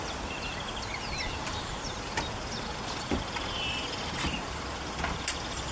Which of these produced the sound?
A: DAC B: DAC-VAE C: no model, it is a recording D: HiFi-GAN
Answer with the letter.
C